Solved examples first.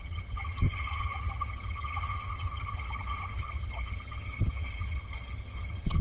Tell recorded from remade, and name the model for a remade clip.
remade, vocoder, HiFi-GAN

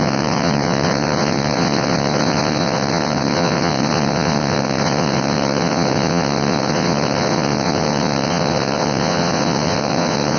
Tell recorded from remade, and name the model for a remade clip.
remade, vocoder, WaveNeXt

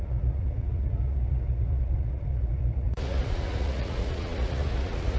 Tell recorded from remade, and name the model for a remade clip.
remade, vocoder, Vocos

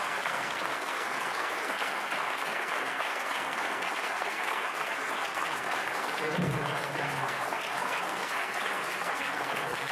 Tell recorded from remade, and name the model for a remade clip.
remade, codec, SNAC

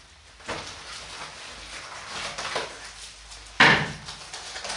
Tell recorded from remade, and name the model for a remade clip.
recorded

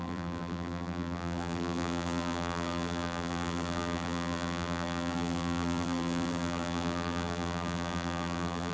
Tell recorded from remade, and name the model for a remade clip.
remade, vocoder, BigVGAN v2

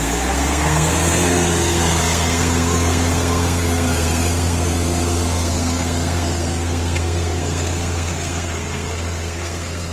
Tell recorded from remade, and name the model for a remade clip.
remade, codec, SNAC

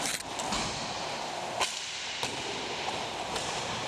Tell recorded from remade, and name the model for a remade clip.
recorded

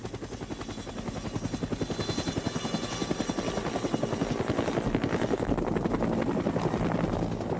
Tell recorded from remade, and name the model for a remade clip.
recorded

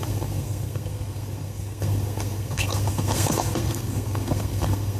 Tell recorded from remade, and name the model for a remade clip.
remade, codec, SNAC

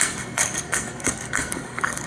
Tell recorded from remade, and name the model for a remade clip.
remade, codec, SNAC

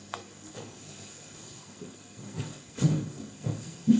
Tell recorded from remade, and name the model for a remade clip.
remade, codec, SNAC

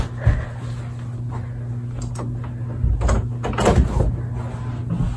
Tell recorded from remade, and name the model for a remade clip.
recorded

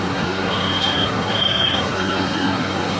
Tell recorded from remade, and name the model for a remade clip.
remade, codec, SNAC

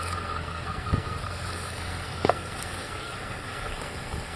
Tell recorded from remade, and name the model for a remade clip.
remade, codec, SNAC